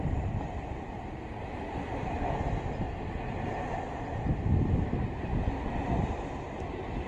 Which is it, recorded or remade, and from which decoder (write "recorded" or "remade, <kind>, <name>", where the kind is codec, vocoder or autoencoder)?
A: recorded